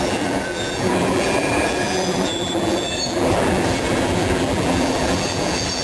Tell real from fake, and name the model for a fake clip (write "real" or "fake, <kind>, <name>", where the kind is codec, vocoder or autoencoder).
fake, vocoder, BigVGAN v2